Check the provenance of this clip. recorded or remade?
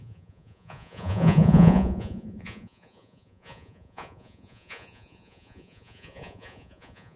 remade